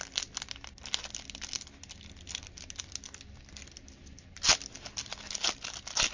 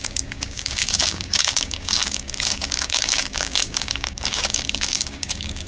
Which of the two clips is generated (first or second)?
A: second